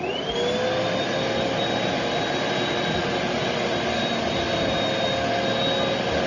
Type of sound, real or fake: real